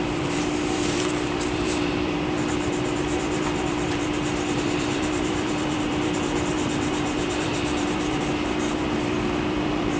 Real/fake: fake